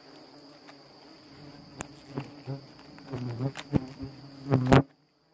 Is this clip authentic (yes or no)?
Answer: yes